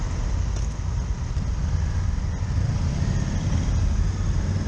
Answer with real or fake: real